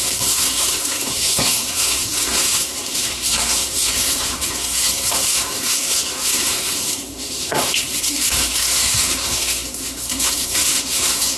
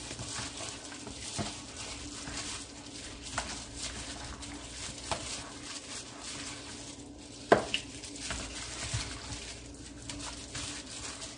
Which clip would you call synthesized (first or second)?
first